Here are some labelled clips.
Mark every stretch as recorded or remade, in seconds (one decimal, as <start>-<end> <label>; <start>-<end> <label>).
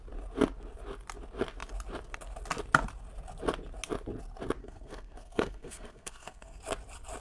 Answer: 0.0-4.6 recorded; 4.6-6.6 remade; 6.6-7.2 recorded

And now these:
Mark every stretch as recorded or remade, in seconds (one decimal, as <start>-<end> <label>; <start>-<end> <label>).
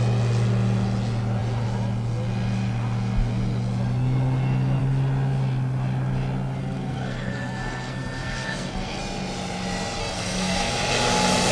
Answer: 0.0-6.6 recorded; 6.6-9.0 remade; 9.0-10.0 recorded; 10.0-10.7 remade; 10.7-11.5 recorded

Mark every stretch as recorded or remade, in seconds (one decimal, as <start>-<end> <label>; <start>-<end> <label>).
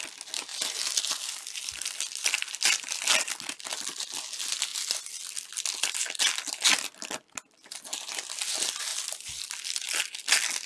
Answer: 0.0-10.7 recorded